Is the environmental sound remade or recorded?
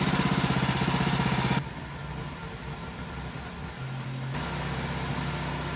recorded